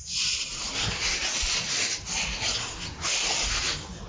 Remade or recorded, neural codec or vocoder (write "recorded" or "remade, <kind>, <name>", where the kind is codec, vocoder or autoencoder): recorded